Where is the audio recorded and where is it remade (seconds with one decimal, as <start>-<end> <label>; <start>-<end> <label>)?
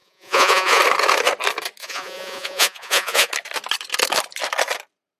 0.0-0.8 remade; 0.8-1.8 recorded; 1.8-3.3 remade; 3.3-5.2 recorded